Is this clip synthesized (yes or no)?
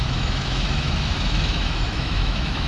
yes